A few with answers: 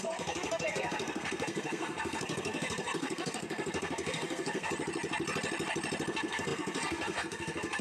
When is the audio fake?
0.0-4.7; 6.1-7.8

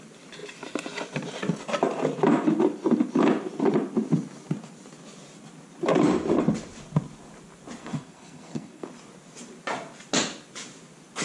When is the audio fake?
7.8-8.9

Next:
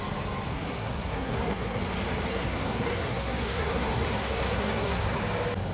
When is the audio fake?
0.5-1.8; 2.3-5.2